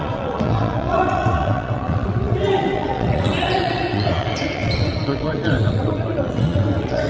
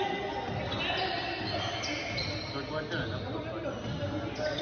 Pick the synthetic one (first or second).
first